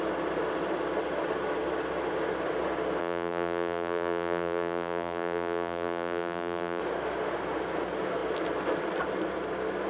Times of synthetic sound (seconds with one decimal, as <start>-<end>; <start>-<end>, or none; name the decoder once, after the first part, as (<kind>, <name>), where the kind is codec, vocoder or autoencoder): 3.0-6.8 (vocoder, BigVGAN v2)